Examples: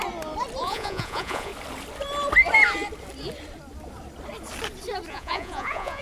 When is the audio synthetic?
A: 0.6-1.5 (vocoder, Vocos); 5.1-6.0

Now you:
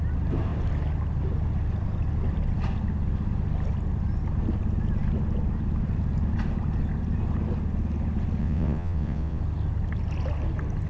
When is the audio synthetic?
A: 8.4-9.4 (vocoder, WaveNeXt)

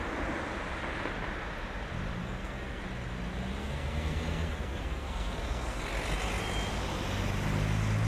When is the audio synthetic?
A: 2.2-2.8 (codec, SNAC); 3.6-5.8

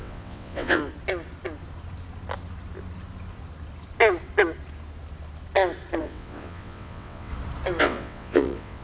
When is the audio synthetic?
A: 0.0-0.8 (vocoder, WaveNeXt); 6.0-7.3; 7.8-8.8

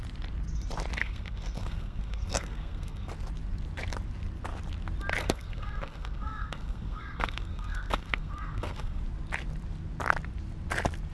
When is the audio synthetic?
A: 1.0-3.1 (codec, SNAC); 5.2-9.0

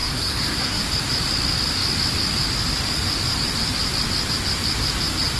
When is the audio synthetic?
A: 0.0-0.8 (codec, SNAC)

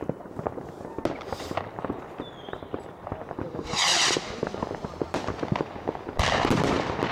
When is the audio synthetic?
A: 3.8-5.6 (vocoder, BigVGAN v2)